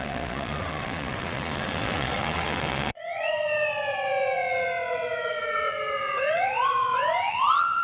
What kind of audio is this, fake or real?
fake